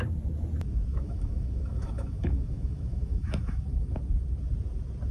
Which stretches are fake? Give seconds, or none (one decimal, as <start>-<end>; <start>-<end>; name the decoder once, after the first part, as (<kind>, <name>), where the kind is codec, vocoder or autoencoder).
0.9-4.0 (autoencoder, DAC-VAE)

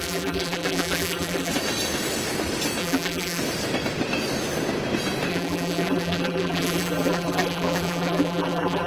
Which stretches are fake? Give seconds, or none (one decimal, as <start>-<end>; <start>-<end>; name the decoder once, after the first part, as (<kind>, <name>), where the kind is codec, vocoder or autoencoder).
0.0-1.5 (vocoder, BigVGAN v2); 2.8-3.4; 5.3-8.9

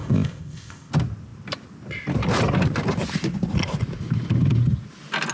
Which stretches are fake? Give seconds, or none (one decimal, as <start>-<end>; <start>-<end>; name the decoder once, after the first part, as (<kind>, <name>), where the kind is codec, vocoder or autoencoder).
0.0-0.9 (codec, ZipCodec)

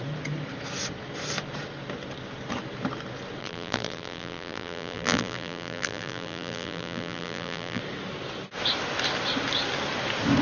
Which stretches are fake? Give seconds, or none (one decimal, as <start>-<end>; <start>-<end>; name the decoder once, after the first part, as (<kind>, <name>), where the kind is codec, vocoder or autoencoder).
3.4-7.8 (vocoder, BigVGAN v2)

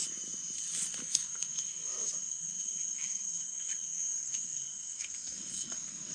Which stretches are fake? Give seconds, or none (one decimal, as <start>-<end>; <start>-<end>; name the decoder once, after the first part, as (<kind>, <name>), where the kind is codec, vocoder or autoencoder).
1.0-6.1 (codec, SNAC)

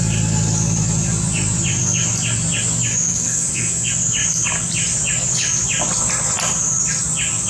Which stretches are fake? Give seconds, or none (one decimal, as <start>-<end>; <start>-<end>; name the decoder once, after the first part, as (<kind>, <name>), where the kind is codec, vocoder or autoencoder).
3.1-3.9 (codec, SNAC)